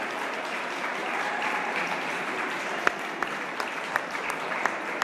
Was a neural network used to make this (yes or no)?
yes